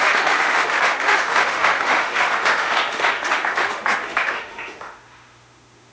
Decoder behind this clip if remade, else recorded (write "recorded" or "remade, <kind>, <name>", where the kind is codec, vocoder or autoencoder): remade, autoencoder, DAC-VAE